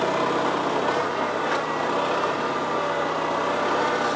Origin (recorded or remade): recorded